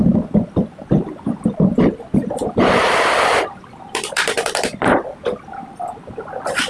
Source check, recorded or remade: remade